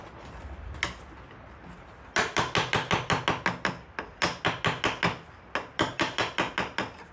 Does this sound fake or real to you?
real